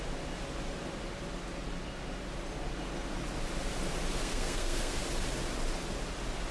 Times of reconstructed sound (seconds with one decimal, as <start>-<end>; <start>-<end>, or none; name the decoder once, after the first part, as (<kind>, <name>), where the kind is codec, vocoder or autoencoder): 4.2-5.0 (codec, SNAC)